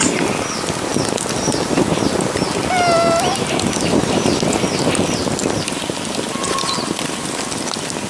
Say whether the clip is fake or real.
real